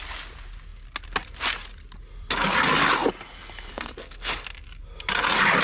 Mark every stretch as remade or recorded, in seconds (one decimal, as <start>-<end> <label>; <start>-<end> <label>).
0.0-3.7 recorded; 3.7-4.3 remade; 4.3-5.6 recorded